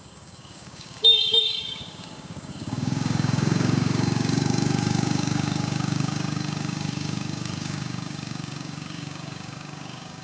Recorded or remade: remade